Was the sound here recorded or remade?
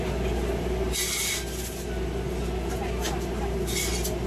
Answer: recorded